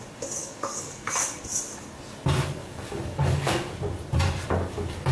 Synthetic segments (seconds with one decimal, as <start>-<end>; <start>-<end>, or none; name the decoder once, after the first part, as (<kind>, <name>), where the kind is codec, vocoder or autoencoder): 0.4-1.4 (codec, DAC); 2.6-3.7